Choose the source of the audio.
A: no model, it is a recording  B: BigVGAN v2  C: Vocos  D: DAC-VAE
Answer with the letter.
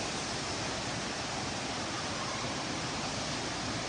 A